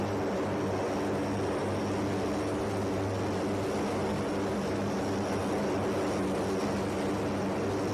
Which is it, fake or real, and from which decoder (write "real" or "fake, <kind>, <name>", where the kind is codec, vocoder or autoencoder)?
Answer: real